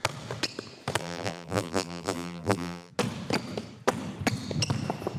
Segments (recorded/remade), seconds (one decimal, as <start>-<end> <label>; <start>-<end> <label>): 0.0-1.0 recorded; 1.0-2.9 remade; 2.9-5.2 recorded